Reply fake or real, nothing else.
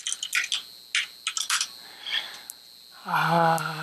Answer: real